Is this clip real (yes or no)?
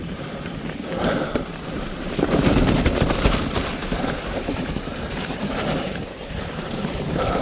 no